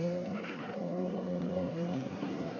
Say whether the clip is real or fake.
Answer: fake